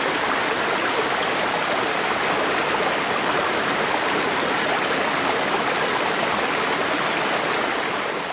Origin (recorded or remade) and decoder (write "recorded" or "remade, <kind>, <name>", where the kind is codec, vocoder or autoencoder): recorded